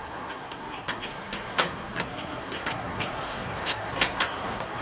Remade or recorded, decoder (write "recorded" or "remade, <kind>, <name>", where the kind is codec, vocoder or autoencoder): remade, codec, SNAC